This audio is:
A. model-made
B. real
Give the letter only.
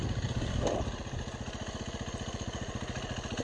B